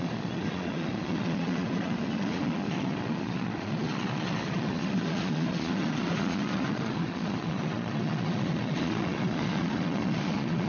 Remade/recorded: remade